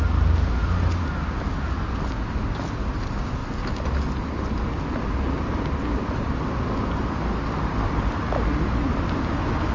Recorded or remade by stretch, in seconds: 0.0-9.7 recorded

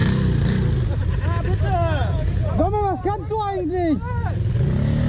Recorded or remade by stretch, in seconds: 0.0-2.0 recorded; 2.0-2.5 remade; 2.5-5.1 recorded

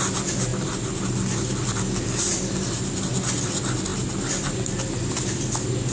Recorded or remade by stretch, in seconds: 0.0-5.9 recorded

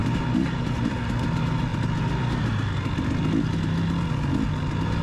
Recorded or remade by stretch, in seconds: 0.0-5.0 recorded